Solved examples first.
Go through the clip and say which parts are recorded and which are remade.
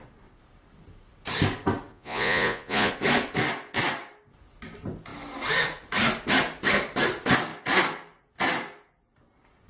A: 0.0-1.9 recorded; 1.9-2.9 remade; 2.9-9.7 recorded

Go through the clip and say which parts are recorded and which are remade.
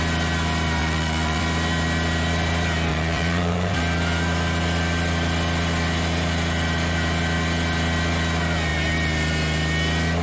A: 0.0-0.8 recorded; 0.8-1.4 remade; 1.4-2.9 recorded; 2.9-3.8 remade; 3.8-10.2 recorded